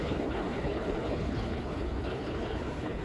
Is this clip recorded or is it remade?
remade